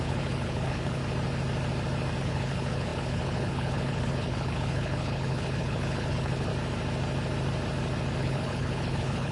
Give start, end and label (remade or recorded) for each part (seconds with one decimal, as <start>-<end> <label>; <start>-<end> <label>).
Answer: 0.0-1.0 remade; 1.0-2.2 recorded; 2.2-6.5 remade; 6.5-8.2 recorded; 8.2-9.3 remade